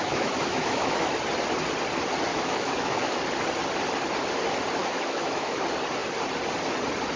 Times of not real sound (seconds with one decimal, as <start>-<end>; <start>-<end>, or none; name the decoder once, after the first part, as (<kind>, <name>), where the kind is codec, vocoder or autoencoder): 0.0-1.1 (autoencoder, DAC-VAE); 2.3-3.2; 4.8-5.6